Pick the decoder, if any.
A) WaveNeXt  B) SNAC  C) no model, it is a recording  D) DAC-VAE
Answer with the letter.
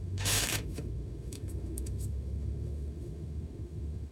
D